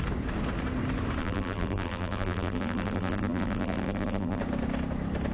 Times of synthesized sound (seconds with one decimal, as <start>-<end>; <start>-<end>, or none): 1.2-4.4